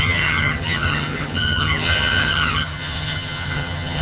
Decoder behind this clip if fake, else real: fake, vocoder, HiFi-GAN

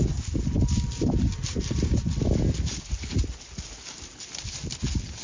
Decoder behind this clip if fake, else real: real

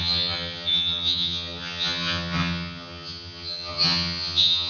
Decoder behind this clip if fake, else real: fake, vocoder, HiFi-GAN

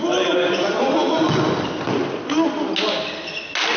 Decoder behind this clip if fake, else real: real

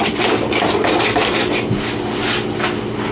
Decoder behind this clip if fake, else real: real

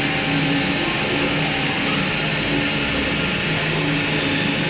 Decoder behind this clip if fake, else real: real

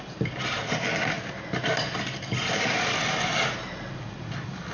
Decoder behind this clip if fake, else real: real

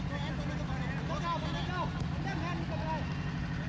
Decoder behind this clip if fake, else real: real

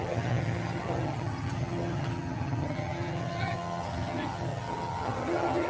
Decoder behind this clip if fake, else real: fake, vocoder, HiFi-GAN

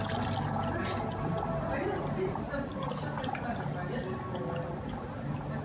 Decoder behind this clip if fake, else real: real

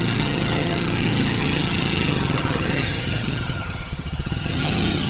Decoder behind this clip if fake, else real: fake, vocoder, HiFi-GAN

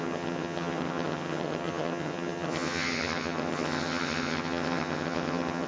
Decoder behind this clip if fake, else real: fake, vocoder, HiFi-GAN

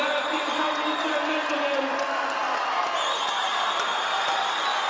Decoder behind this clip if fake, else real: real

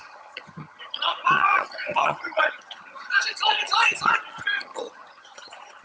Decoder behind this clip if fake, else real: fake, vocoder, HiFi-GAN